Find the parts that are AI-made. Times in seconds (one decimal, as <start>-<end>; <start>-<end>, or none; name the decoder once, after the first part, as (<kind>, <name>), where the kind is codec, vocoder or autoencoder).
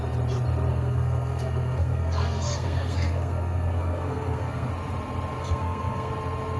0.7-4.7 (codec, SNAC); 5.4-6.1